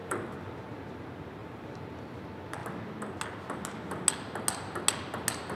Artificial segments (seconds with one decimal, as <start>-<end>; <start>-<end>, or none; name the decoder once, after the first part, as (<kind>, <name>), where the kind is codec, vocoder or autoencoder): 0.0-0.8 (vocoder, BigVGAN v2); 1.4-2.2